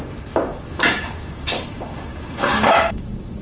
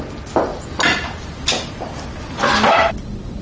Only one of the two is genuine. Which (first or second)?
second